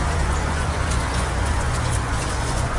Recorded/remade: remade